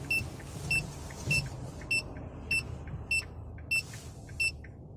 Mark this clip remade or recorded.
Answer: recorded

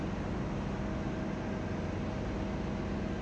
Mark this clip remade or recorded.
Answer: recorded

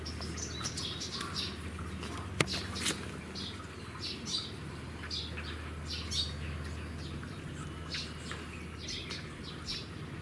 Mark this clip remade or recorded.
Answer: recorded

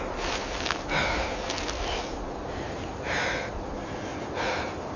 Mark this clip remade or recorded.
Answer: recorded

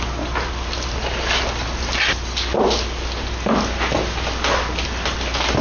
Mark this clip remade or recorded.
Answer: recorded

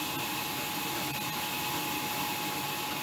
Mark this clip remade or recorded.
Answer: recorded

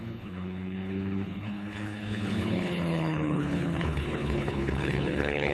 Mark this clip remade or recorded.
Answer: remade